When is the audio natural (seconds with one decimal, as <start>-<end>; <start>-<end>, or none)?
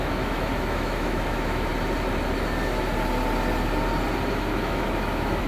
1.7-4.3